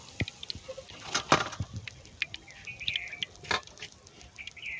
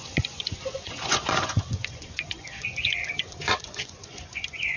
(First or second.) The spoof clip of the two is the second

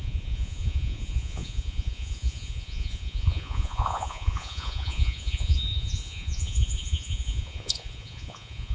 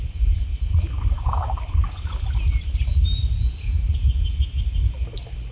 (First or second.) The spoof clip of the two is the first